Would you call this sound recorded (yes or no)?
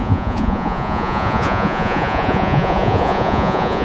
no